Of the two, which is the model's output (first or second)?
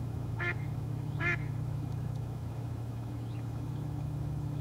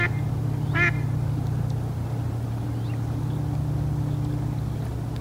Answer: first